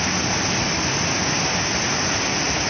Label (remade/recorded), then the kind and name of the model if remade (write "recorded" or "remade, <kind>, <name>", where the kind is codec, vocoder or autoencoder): recorded